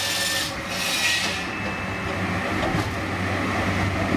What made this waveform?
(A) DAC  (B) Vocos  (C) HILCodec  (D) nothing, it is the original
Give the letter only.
D